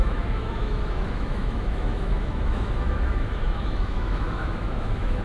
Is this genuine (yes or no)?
no